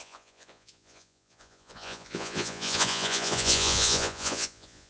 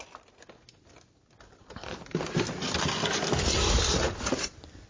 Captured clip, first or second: second